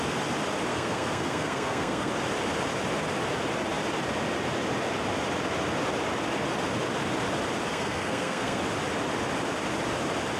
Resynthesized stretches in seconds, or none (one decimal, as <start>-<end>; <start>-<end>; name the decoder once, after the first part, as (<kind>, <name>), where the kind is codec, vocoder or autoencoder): 0.7-2.1 (codec, SNAC); 7.7-8.6